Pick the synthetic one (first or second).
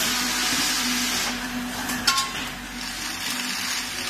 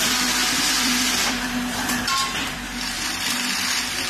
second